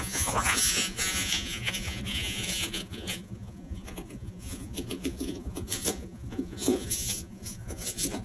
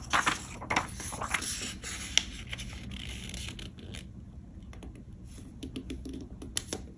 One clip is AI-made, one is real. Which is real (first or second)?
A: second